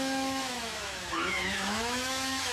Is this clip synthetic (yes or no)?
yes